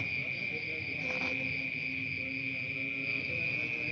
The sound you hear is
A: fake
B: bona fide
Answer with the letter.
B